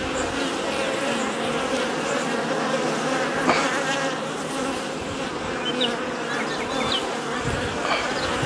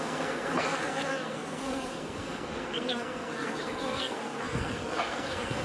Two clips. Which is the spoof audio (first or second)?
second